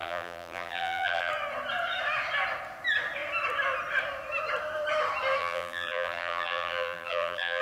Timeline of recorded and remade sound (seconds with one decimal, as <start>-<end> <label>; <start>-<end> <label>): 0.0-1.3 remade; 1.3-5.4 recorded; 5.4-7.6 remade